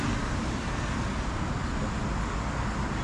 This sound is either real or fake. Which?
real